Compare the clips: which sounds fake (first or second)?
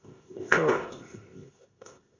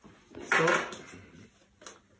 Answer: first